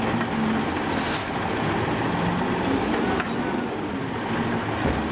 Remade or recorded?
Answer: recorded